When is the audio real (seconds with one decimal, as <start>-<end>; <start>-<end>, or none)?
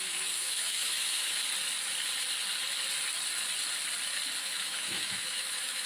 1.4-4.4